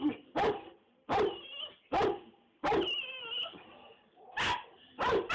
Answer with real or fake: real